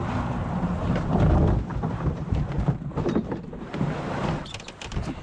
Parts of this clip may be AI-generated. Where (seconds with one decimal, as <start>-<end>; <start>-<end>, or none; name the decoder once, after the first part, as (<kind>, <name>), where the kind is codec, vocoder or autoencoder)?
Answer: 1.7-3.9 (vocoder, BigVGAN v2)